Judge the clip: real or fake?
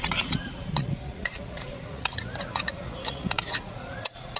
fake